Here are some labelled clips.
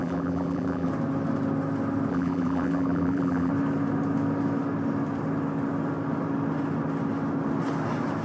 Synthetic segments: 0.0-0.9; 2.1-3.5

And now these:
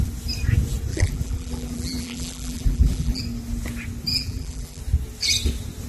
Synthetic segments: 0.9-3.2; 4.1-4.8

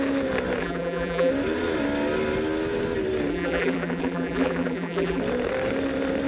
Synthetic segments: 0.6-1.3; 3.3-5.2

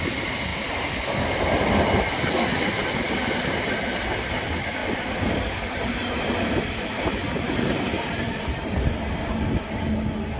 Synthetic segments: 0.5-2.3; 4.8-9.3

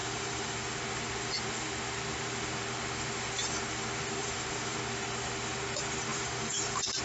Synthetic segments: 0.0-0.6; 4.2-4.8; 6.1-7.0